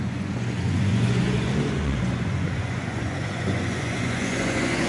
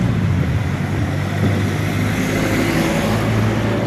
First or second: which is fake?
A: first